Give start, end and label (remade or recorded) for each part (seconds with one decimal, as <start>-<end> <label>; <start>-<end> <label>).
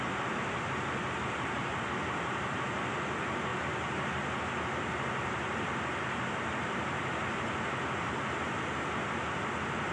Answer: 0.0-9.9 recorded